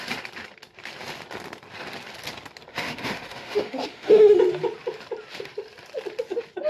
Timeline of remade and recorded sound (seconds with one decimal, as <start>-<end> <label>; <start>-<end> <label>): 0.0-2.7 recorded; 2.7-4.4 remade; 4.4-6.7 recorded